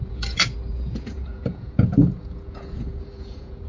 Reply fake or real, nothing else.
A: fake